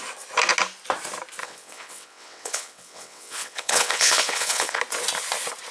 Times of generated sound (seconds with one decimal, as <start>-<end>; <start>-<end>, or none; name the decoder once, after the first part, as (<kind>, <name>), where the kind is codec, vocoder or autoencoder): 1.4-4.8 (vocoder, WaveNeXt)